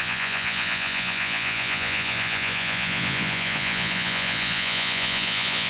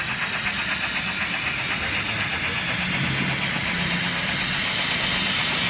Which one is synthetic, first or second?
first